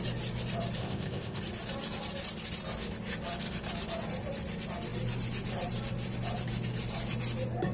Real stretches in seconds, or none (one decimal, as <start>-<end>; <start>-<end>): 0.0-0.8; 1.4-7.7